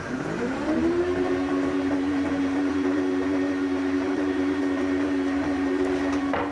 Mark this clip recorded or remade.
remade